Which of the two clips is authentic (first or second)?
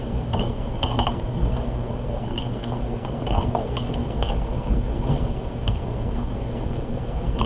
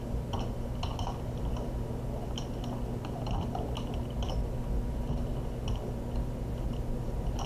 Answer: second